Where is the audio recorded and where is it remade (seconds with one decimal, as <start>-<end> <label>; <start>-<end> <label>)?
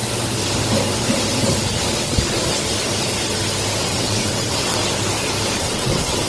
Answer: 0.0-3.8 recorded; 3.8-4.8 remade; 4.8-5.6 recorded; 5.6-6.3 remade